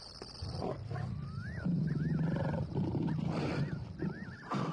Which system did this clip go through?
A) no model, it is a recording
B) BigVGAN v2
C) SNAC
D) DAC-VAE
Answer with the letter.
A